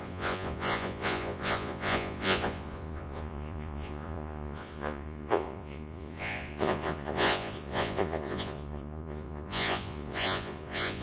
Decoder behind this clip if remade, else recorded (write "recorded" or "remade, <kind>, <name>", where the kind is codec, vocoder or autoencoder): remade, vocoder, Vocos